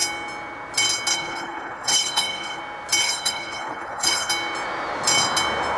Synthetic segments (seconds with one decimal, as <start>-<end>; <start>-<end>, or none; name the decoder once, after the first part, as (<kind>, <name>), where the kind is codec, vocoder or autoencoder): 1.1-2.6 (codec, HILCodec); 3.0-4.3